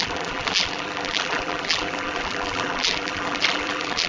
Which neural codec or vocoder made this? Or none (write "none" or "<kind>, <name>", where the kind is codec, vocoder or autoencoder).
vocoder, BigVGAN v2